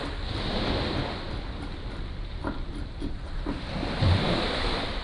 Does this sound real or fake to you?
real